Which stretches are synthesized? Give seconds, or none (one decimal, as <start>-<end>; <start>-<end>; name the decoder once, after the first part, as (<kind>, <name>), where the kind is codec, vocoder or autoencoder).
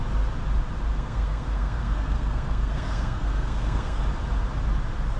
0.9-4.0 (codec, SNAC)